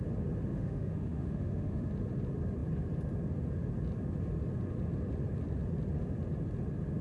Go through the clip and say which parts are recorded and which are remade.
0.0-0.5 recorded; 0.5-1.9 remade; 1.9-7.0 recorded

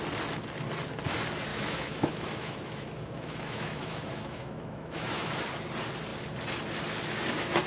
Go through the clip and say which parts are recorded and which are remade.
0.0-1.5 recorded; 1.5-5.4 remade; 5.4-7.7 recorded

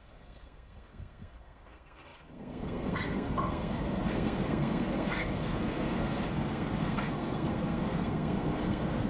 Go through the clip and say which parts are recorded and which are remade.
0.0-9.1 remade

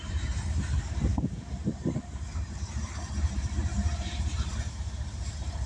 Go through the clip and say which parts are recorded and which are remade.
0.0-5.7 remade

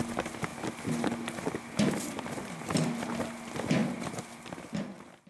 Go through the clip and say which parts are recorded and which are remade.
0.0-5.3 recorded

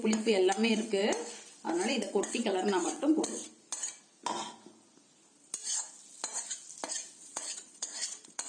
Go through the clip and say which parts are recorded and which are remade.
0.0-1.0 remade; 1.0-2.1 recorded; 2.1-3.4 remade; 3.4-7.2 recorded; 7.2-8.5 remade

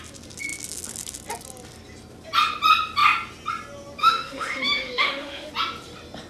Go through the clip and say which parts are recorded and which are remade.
0.0-4.0 recorded; 4.0-5.5 remade; 5.5-6.3 recorded

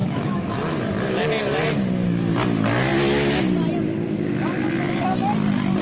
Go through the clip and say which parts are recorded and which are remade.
0.0-0.5 remade; 0.5-5.8 recorded